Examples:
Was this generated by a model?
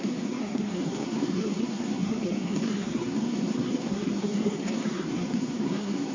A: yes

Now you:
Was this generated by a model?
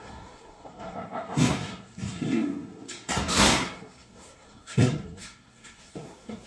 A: yes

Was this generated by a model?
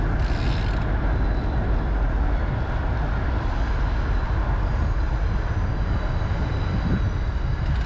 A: no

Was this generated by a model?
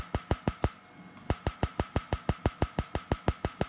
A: no